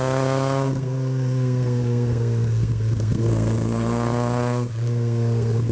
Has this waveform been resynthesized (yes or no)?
yes